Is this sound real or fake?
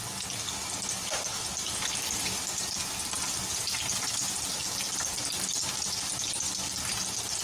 real